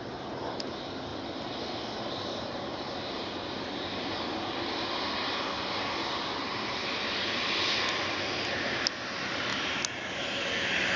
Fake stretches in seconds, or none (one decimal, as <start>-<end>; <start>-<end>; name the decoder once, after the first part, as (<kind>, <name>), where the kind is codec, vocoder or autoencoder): none